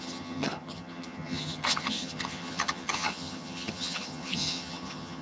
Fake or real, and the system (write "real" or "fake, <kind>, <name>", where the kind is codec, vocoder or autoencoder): fake, vocoder, HiFi-GAN